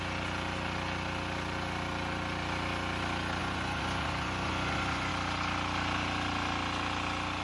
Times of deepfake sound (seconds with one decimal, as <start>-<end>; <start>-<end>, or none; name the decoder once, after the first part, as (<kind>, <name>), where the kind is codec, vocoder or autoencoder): 3.4-5.1 (vocoder, Vocos)